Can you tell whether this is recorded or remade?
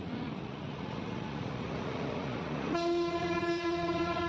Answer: remade